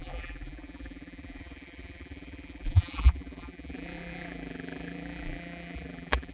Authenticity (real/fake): fake